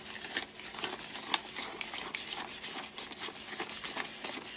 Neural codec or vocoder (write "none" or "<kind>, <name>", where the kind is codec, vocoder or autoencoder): none